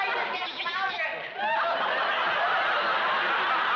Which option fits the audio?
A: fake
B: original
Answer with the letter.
B